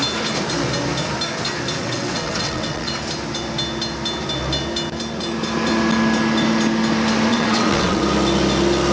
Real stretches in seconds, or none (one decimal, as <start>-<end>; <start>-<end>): 0.0-1.8; 2.9-7.3; 8.0-8.9